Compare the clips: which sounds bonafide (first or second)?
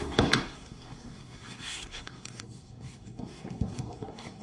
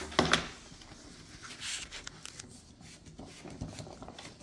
second